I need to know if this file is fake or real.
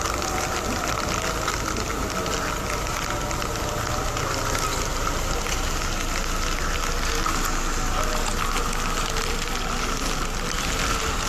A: real